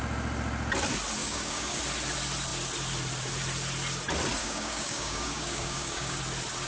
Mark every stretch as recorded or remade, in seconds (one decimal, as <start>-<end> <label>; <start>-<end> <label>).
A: 0.0-1.2 recorded; 1.2-1.8 remade; 1.8-4.4 recorded; 4.4-6.2 remade; 6.2-6.7 recorded